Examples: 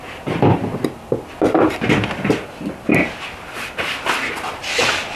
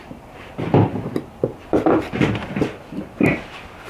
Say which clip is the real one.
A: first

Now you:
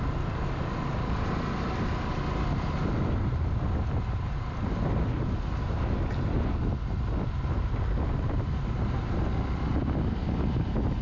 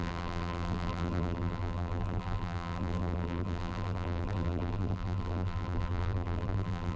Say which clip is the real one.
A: first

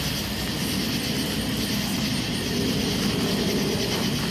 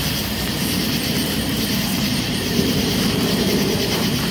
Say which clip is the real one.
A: first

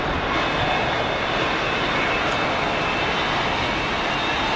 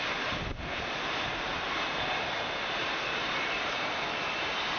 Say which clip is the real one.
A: first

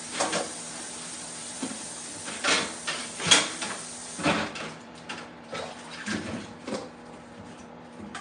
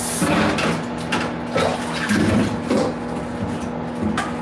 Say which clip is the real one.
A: second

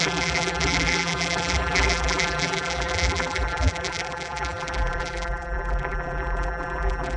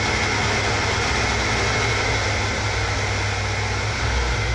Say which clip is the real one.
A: second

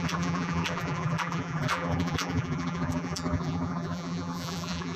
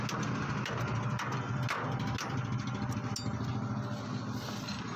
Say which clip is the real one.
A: second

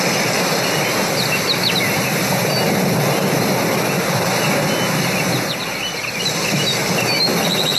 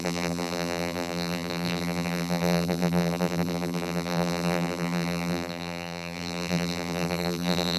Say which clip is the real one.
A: first